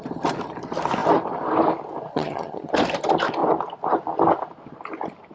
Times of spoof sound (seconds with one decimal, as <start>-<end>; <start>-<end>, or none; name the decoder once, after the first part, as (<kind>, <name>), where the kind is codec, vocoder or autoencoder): 2.1-2.7 (vocoder, HiFi-GAN)